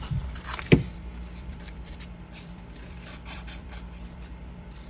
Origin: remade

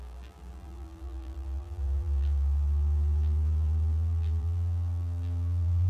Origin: remade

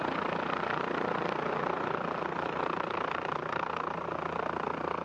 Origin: recorded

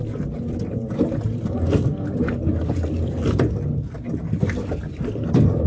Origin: recorded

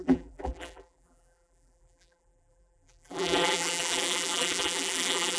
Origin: remade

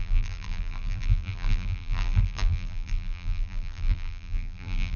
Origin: remade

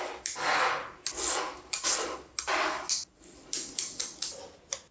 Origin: recorded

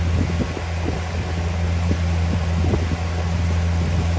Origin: recorded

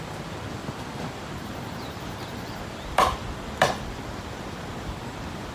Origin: remade